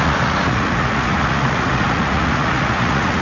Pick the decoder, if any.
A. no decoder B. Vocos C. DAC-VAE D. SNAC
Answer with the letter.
B